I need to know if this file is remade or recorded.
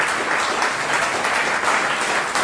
recorded